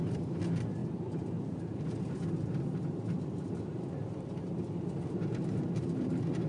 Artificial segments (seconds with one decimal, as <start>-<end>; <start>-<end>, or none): 0.0-6.5